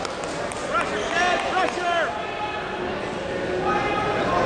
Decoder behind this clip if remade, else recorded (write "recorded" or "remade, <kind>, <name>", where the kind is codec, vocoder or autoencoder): recorded